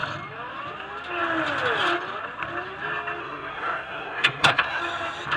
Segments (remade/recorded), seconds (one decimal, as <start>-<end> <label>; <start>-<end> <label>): 0.0-3.2 recorded; 3.2-4.8 remade; 4.8-5.4 recorded